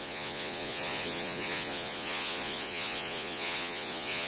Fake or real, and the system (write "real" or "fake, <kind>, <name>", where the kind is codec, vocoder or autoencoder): fake, vocoder, Vocos